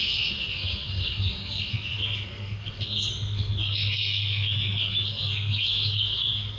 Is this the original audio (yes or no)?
no